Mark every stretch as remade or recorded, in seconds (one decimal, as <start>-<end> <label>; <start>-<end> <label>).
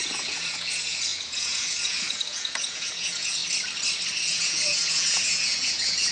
0.0-3.4 remade; 3.4-4.2 recorded; 4.2-6.1 remade